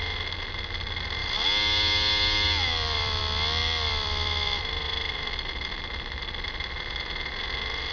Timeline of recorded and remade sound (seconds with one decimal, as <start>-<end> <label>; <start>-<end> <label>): 0.0-1.2 recorded; 1.2-3.2 remade; 3.2-3.6 recorded; 3.6-5.7 remade; 5.7-7.9 recorded